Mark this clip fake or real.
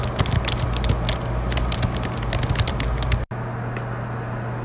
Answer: real